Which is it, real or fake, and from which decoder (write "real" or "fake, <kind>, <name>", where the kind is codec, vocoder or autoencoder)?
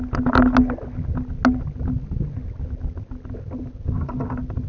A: real